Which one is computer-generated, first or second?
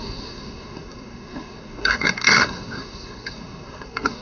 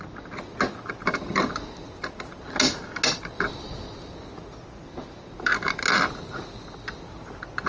first